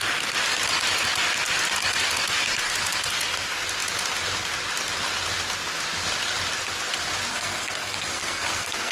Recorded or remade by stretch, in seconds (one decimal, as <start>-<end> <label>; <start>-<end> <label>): 0.0-7.3 recorded; 7.3-8.9 remade